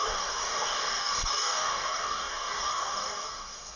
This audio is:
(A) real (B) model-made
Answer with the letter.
B